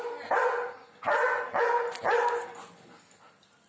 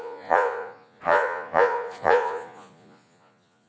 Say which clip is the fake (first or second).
second